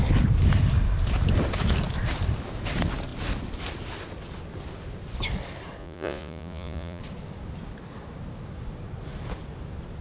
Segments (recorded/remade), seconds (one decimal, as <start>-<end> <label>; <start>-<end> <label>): 0.0-5.8 recorded; 5.8-7.0 remade; 7.0-10.0 recorded